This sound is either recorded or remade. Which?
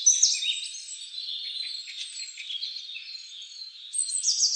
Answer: recorded